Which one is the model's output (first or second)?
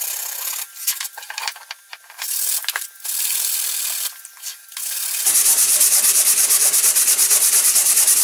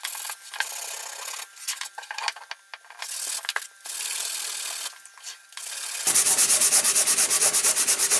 first